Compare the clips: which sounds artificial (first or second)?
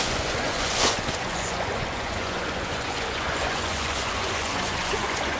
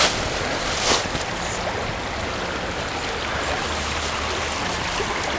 first